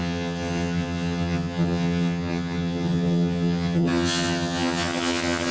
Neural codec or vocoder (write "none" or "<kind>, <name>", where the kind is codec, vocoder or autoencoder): vocoder, HiFi-GAN